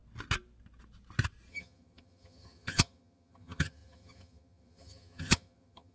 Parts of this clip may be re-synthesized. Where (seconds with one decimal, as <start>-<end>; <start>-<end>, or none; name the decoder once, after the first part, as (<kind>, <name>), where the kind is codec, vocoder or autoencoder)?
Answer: 1.5-5.9 (vocoder, HiFi-GAN)